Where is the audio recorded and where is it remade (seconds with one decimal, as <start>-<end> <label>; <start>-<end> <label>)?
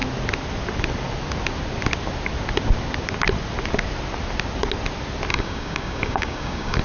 0.0-5.3 recorded; 5.3-6.8 remade